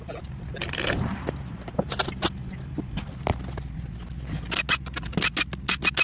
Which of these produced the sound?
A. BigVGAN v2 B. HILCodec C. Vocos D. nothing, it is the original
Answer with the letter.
D